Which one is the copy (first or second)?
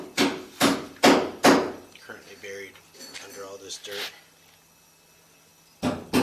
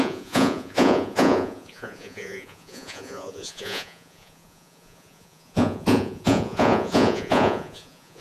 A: second